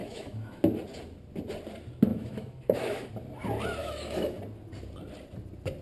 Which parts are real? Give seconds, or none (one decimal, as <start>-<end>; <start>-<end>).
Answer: 0.6-2.1; 3.1-3.8; 4.4-5.8